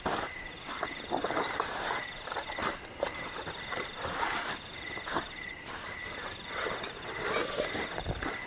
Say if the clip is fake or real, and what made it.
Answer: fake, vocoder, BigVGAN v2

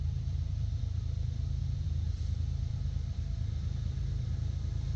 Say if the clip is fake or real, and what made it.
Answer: fake, vocoder, BigVGAN v2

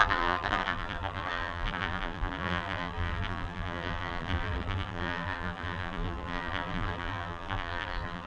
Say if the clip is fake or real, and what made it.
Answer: fake, vocoder, BigVGAN v2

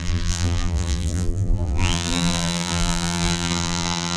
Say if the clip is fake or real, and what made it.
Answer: fake, vocoder, BigVGAN v2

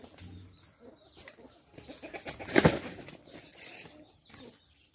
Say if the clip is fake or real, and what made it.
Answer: real